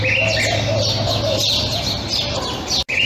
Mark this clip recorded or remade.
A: recorded